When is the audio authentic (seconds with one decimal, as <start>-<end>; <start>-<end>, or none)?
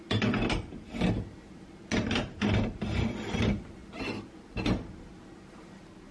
0.0-6.1